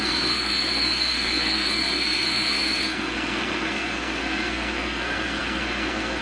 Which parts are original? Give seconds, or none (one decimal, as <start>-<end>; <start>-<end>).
none